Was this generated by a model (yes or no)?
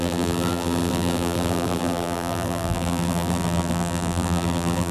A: yes